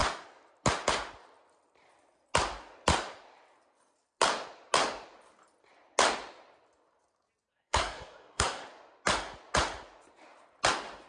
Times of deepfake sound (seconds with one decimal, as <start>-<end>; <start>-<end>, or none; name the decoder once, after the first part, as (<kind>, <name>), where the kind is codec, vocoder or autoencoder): 7.5-8.6 (codec, SNAC)